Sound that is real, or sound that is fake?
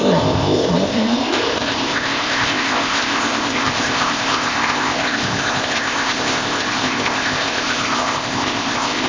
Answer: fake